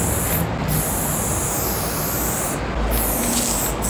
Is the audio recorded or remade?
recorded